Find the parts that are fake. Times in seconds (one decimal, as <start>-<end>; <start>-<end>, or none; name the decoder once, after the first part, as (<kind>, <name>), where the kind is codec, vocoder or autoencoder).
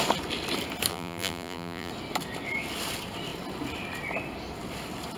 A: 0.9-1.9 (vocoder, BigVGAN v2)